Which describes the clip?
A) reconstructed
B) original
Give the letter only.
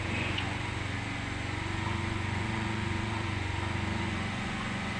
A